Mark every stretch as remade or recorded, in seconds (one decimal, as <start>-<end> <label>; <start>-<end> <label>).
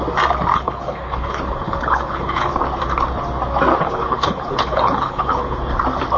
0.0-0.5 recorded; 0.5-2.5 remade; 2.5-3.7 recorded; 3.7-5.7 remade; 5.7-6.2 recorded